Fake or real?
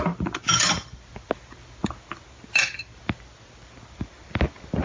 real